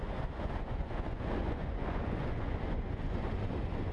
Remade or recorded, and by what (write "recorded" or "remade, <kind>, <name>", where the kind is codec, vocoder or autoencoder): remade, vocoder, Vocos